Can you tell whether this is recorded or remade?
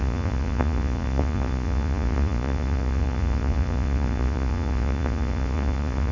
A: remade